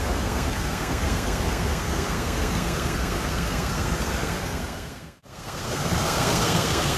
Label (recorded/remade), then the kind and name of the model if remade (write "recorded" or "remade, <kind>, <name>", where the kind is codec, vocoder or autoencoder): remade, codec, SNAC